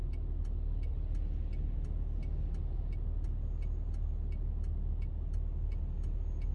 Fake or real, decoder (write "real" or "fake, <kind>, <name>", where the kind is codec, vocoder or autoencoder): real